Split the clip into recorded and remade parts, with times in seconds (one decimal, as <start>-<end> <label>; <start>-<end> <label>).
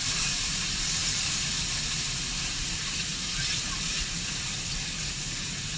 0.0-5.8 remade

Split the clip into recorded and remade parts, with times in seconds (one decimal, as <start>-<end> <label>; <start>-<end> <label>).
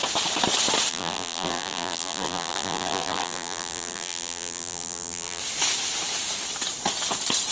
0.0-0.9 recorded; 0.9-5.4 remade; 5.4-7.5 recorded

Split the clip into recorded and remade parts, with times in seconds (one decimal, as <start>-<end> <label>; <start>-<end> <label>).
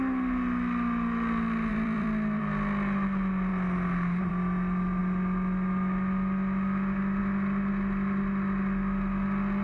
0.0-1.7 recorded; 1.7-2.4 remade; 2.4-9.6 recorded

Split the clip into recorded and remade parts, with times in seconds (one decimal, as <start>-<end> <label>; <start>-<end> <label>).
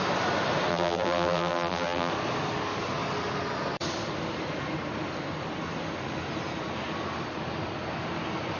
0.0-0.7 recorded; 0.7-2.1 remade; 2.1-8.6 recorded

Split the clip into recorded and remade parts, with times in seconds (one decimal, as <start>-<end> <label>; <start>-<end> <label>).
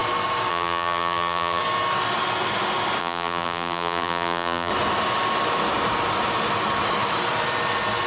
0.0-0.5 recorded; 0.5-1.6 remade; 1.6-3.0 recorded; 3.0-4.7 remade; 4.7-8.1 recorded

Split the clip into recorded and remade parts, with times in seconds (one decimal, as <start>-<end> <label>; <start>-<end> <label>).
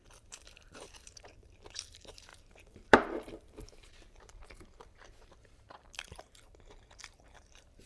0.0-7.9 remade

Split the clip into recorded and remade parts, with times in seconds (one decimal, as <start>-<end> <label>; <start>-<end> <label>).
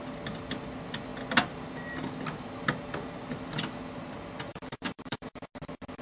0.0-4.5 recorded; 4.5-5.5 remade; 5.5-6.0 recorded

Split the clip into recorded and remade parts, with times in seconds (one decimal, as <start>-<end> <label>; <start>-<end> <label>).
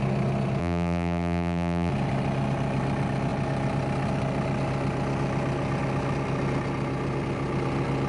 0.0-0.6 recorded; 0.6-1.9 remade; 1.9-8.1 recorded